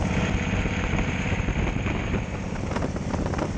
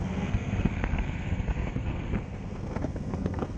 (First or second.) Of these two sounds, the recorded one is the first